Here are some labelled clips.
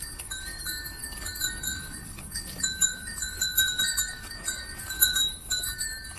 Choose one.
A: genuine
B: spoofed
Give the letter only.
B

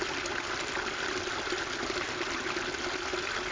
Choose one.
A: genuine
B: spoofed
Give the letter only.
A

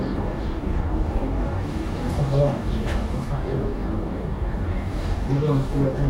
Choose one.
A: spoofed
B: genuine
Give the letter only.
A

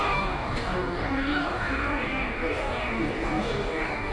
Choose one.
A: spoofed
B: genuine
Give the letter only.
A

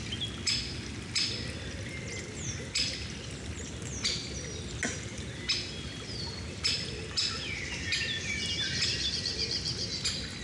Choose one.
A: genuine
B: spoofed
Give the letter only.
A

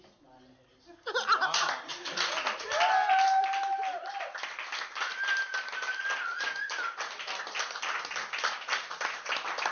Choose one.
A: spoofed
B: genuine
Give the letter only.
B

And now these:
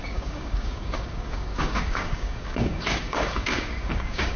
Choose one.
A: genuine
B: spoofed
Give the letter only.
B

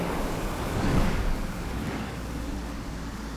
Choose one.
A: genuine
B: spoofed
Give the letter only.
B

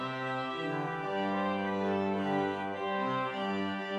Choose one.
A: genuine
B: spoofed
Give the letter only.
B